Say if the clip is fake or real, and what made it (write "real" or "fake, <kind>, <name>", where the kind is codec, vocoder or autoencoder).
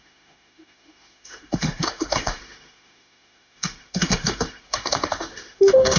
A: fake, autoencoder, DAC-VAE